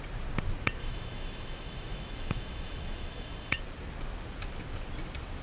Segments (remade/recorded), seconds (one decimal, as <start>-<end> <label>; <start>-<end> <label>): 0.0-0.8 recorded; 0.8-3.6 remade; 3.6-5.4 recorded

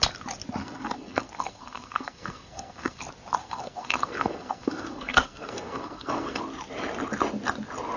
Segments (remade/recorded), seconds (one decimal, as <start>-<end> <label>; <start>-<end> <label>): 0.0-0.6 recorded; 0.6-3.0 remade; 3.0-3.4 recorded; 3.4-6.4 remade; 6.4-8.0 recorded